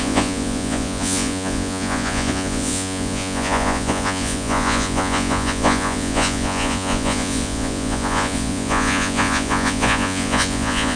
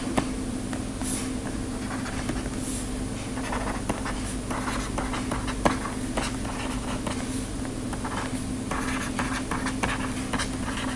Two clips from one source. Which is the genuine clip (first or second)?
second